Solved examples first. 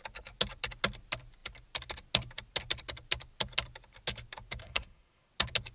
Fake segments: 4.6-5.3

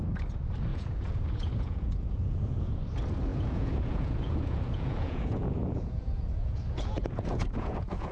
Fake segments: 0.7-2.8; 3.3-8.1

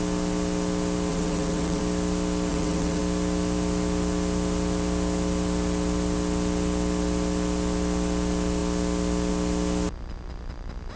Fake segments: 1.1-1.8; 2.5-3.0

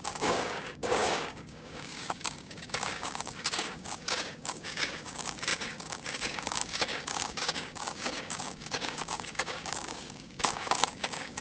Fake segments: 0.0-11.4

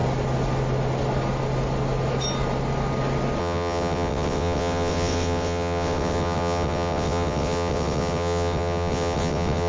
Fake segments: 3.4-9.7